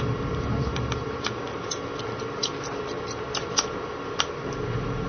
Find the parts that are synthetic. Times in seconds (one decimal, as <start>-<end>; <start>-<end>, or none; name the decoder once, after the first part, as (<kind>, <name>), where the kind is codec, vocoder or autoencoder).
0.0-5.1 (vocoder, BigVGAN v2)